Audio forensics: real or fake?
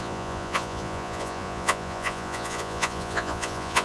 fake